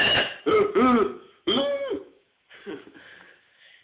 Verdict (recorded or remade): remade